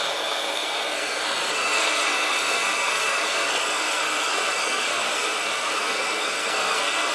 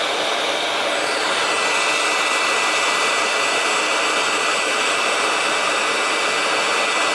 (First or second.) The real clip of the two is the second